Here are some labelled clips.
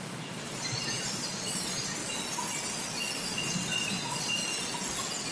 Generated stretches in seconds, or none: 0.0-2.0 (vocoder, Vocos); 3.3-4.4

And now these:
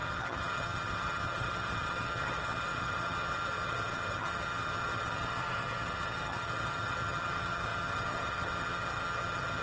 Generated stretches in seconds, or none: 0.0-9.6 (vocoder, HiFi-GAN)

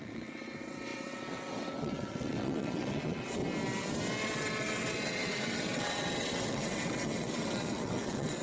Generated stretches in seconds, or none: 0.0-3.4 (vocoder, WaveNeXt); 4.2-8.4

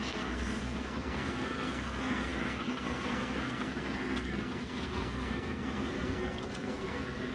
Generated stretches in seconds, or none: 0.0-7.3 (codec, SNAC)